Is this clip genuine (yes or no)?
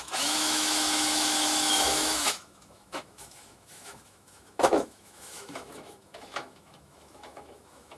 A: no